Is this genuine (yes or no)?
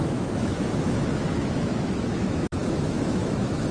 no